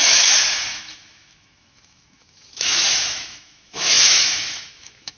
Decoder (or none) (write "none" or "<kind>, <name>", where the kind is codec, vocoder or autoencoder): autoencoder, DAC-VAE